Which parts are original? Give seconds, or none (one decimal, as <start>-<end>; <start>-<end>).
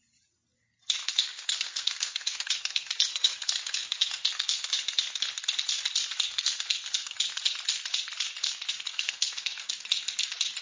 0.0-1.0; 5.2-6.3; 7.2-8.9; 9.7-10.6